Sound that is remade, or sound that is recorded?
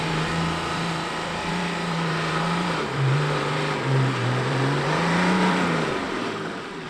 remade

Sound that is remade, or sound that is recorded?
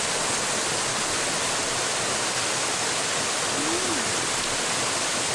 recorded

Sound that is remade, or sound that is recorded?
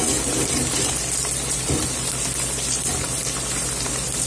remade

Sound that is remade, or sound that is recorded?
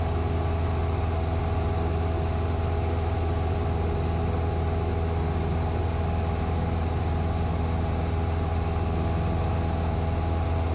recorded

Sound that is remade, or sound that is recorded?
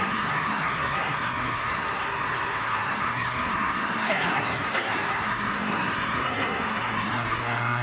remade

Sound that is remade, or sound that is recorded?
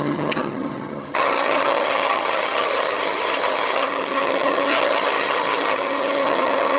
remade